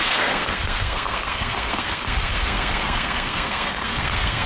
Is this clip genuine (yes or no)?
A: no